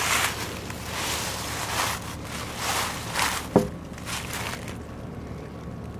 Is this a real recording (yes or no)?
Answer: yes